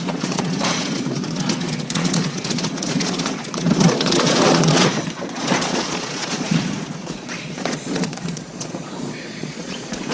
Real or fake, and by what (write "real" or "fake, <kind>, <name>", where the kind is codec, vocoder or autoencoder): fake, vocoder, Vocos